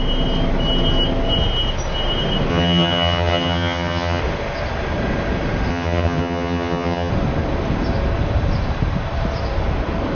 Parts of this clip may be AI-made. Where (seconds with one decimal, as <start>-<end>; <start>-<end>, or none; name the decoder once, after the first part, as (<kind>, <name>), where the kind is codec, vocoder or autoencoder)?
2.5-4.2 (vocoder, HiFi-GAN); 5.7-7.1

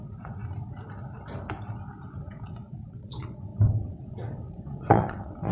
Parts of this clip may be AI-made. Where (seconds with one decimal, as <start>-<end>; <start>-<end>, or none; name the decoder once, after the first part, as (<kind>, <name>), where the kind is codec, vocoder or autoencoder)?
0.0-0.4 (vocoder, WaveNeXt); 2.0-5.5

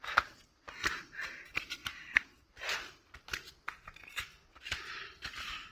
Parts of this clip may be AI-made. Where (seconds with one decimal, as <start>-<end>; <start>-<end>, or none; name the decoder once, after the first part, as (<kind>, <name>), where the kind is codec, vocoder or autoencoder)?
none

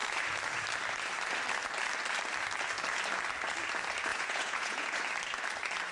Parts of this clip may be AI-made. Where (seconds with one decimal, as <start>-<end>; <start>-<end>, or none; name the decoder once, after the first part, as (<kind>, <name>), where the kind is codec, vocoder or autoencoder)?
4.1-5.0 (vocoder, Vocos)

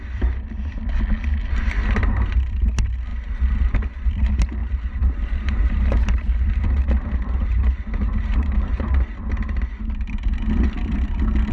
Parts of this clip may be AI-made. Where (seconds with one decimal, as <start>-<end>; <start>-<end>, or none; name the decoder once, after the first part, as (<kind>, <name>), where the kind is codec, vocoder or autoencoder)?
1.5-2.7 (vocoder, BigVGAN v2); 3.1-4.1; 4.6-9.8